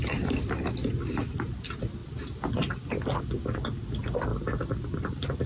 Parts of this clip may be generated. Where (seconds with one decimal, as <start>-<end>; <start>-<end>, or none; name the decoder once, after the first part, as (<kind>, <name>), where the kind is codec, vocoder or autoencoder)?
none